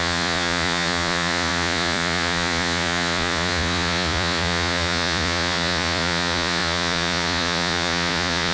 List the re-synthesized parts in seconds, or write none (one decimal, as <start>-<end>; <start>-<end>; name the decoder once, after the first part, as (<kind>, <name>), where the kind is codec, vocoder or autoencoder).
0.0-8.5 (vocoder, Vocos)